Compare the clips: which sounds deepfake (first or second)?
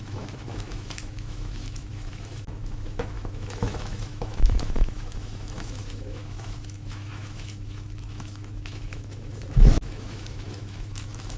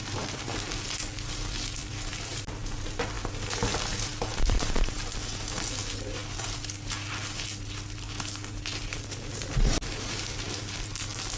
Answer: first